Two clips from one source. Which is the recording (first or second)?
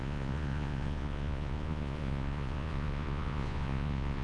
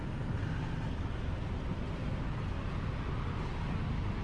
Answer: second